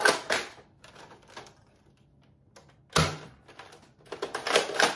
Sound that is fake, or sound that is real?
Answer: real